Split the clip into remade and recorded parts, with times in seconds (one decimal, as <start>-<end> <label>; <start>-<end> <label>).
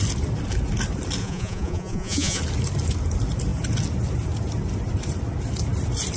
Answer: 0.0-1.2 recorded; 1.2-2.4 remade; 2.4-6.2 recorded